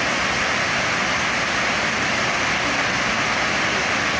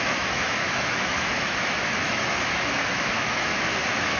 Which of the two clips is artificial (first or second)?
second